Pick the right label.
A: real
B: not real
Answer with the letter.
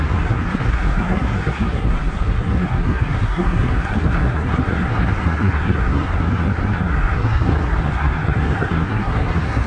B